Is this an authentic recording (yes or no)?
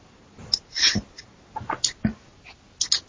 yes